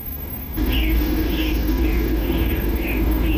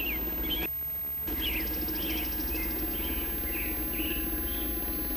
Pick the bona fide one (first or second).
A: second